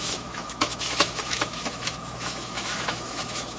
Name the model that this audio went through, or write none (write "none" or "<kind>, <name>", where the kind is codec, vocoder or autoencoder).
autoencoder, DAC-VAE